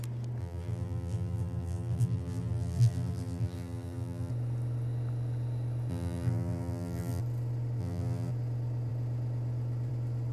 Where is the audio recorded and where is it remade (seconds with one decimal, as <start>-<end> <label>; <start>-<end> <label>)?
0.0-0.4 recorded; 0.4-4.3 remade; 4.3-5.9 recorded; 5.9-7.2 remade; 7.2-7.8 recorded; 7.8-8.3 remade; 8.3-10.3 recorded